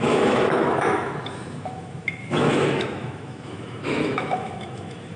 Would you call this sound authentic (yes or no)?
no